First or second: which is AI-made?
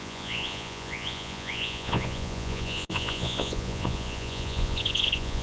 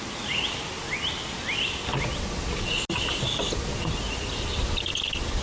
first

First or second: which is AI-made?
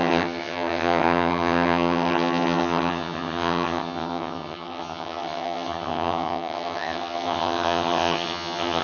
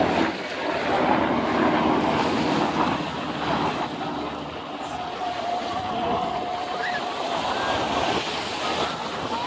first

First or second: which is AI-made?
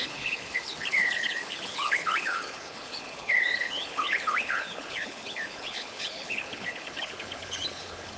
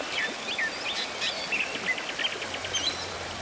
first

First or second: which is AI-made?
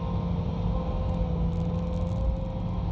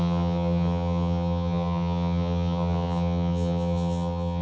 second